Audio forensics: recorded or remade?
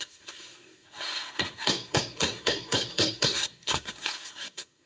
remade